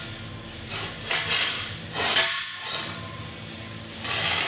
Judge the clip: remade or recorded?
recorded